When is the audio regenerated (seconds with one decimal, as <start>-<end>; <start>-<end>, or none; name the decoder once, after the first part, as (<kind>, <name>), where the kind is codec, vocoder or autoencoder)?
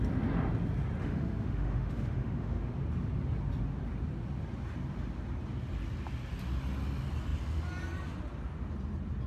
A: 1.0-2.7 (autoencoder, DAC-VAE)